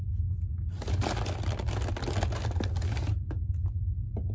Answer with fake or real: real